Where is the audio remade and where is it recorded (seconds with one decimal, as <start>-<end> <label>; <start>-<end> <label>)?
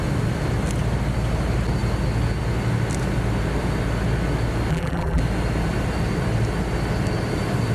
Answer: 0.0-4.7 recorded; 4.7-5.2 remade; 5.2-7.7 recorded